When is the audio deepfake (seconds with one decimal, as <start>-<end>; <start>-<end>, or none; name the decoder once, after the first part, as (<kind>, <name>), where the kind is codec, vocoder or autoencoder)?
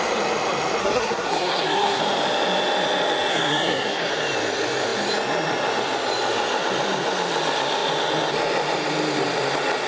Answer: 0.8-2.0 (codec, SNAC); 3.3-4.1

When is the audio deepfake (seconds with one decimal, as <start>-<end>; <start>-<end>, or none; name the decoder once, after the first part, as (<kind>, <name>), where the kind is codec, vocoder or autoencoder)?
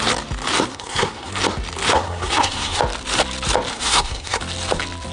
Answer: 0.7-1.3 (codec, SNAC); 1.9-2.8; 3.7-4.4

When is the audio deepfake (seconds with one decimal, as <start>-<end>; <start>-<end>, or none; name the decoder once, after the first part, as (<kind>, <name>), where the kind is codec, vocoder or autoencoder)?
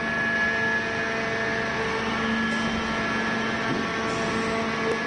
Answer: none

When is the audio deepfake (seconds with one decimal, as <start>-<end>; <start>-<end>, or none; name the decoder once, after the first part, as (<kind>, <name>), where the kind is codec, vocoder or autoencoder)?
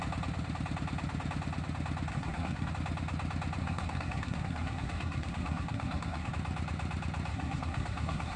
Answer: 2.1-2.7 (codec, SNAC); 3.6-6.3; 7.3-8.4